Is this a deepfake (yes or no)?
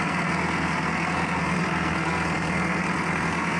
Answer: yes